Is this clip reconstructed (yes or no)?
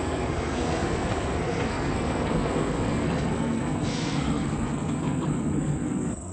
yes